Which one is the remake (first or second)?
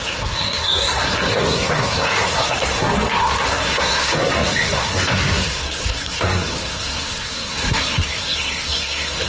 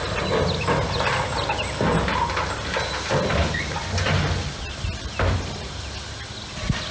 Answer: first